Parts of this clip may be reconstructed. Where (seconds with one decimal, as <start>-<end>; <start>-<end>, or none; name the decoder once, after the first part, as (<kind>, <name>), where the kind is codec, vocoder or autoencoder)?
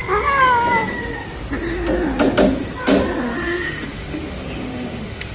3.2-5.3 (autoencoder, DAC-VAE)